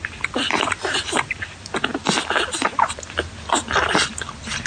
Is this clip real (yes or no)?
yes